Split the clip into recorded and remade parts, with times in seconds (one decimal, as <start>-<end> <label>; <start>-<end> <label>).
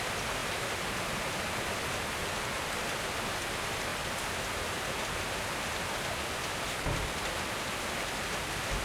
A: 0.0-0.4 recorded; 0.4-2.7 remade; 2.7-8.8 recorded